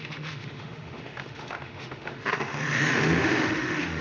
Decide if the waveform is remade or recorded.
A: remade